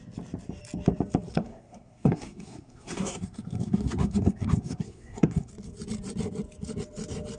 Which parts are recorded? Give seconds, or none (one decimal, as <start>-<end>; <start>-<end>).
0.0-1.3; 5.5-7.4